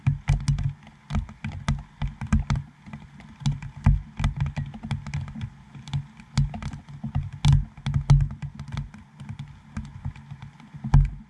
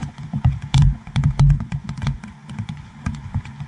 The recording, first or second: first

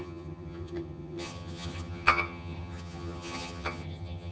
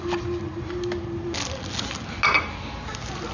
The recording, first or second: second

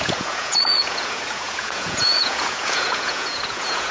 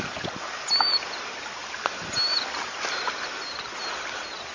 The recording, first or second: second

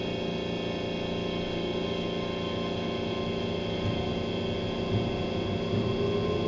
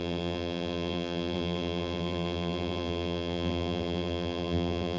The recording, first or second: first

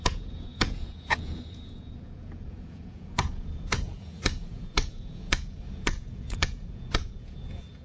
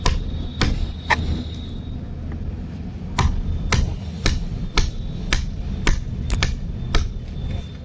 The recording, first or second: second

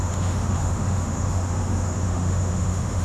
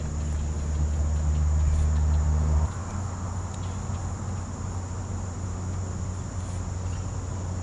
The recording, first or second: second